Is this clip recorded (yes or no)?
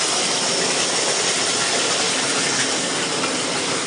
yes